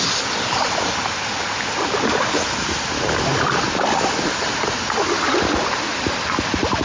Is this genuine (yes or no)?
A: yes